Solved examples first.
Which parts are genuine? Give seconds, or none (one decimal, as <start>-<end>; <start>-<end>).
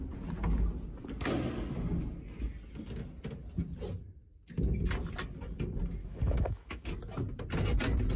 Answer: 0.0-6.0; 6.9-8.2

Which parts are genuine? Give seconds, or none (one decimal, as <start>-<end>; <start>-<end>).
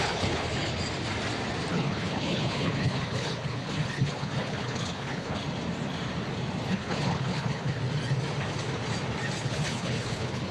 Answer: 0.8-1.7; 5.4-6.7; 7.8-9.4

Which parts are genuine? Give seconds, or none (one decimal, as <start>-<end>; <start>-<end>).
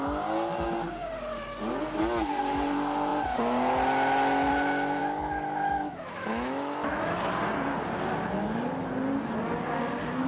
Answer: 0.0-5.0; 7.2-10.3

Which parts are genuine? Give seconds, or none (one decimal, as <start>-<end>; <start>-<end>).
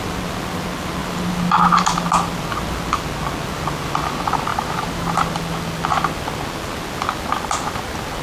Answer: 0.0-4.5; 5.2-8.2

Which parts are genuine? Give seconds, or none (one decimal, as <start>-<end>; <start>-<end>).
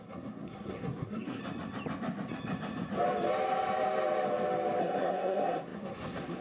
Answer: 1.4-4.8